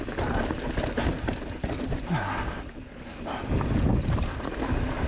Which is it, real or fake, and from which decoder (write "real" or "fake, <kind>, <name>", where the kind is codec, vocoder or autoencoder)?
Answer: real